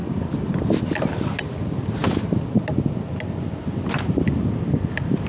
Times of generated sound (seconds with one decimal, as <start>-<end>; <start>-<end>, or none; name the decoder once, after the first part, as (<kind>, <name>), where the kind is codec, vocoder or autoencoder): none

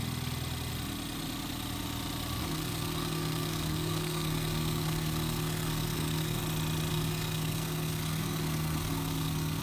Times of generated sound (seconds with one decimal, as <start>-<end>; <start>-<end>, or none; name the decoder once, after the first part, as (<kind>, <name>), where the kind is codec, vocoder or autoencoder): 2.4-6.4 (codec, SNAC); 6.9-9.6

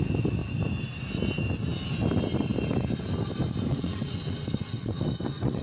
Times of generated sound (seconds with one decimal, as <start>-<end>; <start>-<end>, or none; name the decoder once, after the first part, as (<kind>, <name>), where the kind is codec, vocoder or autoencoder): 3.7-5.6 (vocoder, WaveNeXt)

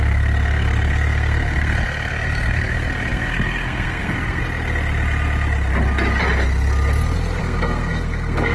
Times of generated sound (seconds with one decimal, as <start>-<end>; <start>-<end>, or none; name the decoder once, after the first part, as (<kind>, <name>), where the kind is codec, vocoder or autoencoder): 0.0-4.4 (codec, SNAC); 7.4-8.5

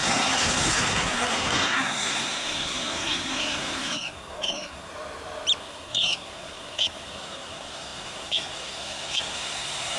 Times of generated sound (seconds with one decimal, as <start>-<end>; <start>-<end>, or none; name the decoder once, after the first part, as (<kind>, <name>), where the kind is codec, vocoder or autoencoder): 0.0-4.9 (codec, SNAC); 5.6-10.0